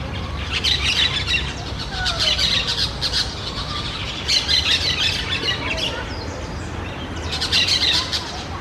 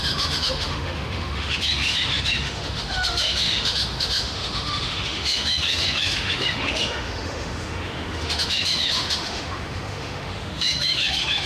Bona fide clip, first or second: first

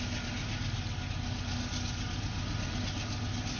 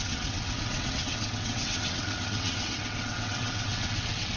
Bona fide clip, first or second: first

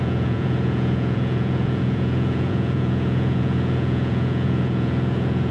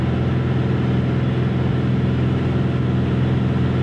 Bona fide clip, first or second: second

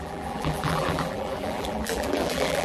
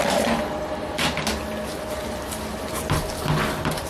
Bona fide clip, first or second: second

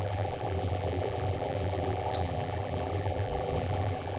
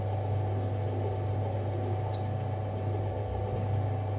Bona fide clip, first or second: second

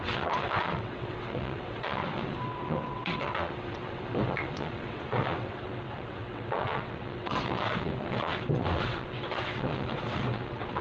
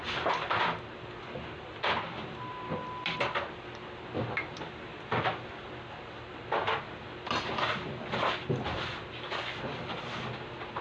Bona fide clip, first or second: second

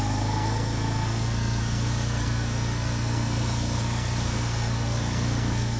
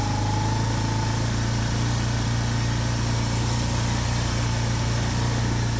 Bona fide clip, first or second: second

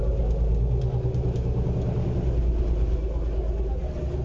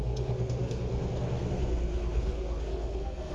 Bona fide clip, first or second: first